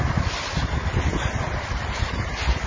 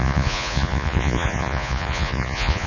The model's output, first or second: second